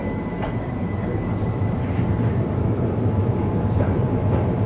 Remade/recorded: remade